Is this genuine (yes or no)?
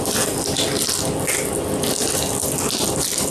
yes